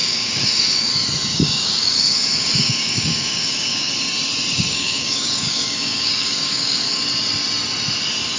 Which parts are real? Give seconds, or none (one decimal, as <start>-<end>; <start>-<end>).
0.9-1.3; 3.9-4.5; 7.0-8.4